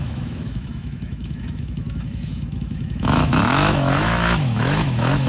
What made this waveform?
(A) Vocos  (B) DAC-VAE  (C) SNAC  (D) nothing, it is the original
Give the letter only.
B